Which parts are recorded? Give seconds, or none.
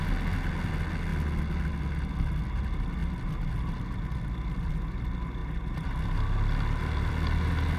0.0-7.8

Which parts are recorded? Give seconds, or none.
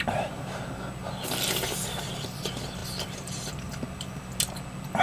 0.0-5.0